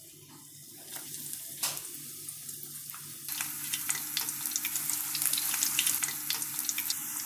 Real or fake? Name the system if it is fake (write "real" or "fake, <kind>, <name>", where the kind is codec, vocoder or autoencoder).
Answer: real